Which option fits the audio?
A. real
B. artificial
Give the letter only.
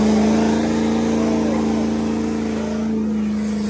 A